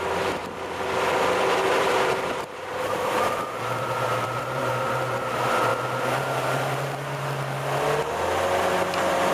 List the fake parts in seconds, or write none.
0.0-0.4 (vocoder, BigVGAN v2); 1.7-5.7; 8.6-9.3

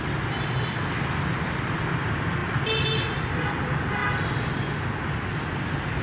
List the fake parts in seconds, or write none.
none

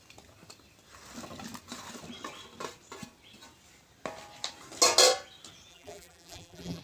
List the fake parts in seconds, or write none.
5.7-6.8 (vocoder, BigVGAN v2)

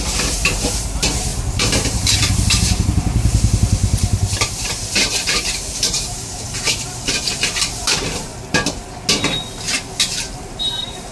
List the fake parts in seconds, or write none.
0.0-8.3 (vocoder, BigVGAN v2); 10.0-11.1

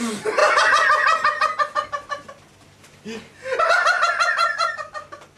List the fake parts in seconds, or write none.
none

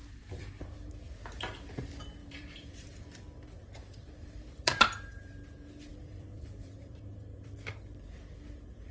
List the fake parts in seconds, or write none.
0.0-0.9 (vocoder, BigVGAN v2); 2.2-5.3; 5.9-7.3

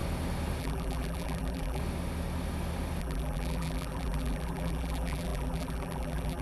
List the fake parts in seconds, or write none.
0.6-1.8 (vocoder, BigVGAN v2); 3.0-6.4